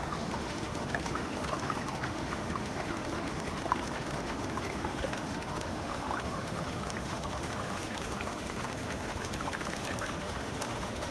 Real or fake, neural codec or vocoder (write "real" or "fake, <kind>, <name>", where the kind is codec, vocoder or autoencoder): fake, autoencoder, DAC-VAE